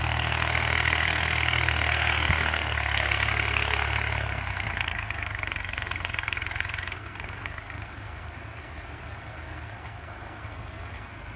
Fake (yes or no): yes